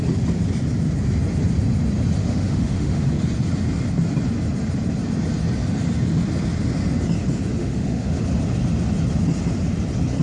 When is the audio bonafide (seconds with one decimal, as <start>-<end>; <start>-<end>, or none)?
0.0-2.2; 3.1-7.6; 8.2-10.2